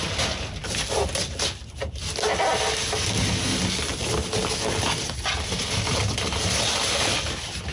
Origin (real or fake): real